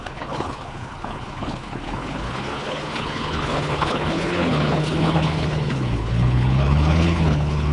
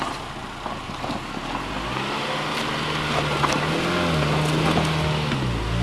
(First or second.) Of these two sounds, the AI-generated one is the first